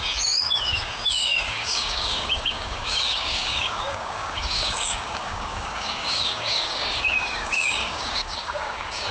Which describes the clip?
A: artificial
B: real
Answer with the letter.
A